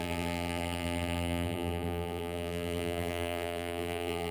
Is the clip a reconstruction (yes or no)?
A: yes